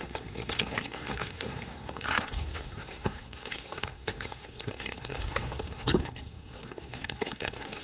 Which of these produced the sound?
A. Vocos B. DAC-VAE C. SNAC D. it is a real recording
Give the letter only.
C